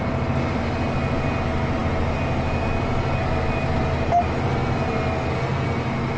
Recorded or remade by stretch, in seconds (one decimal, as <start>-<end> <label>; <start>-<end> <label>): 0.0-6.2 recorded